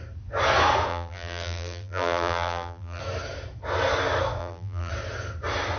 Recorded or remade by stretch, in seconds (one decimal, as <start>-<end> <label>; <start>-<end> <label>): 0.0-0.9 recorded; 0.9-3.0 remade; 3.0-4.4 recorded; 4.4-4.9 remade; 4.9-5.8 recorded